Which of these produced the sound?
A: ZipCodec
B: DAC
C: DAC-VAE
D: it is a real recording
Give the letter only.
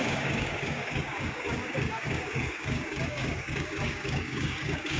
B